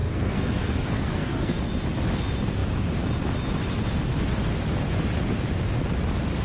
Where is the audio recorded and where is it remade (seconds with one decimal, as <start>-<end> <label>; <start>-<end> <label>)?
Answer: 0.0-1.6 remade; 1.6-6.4 recorded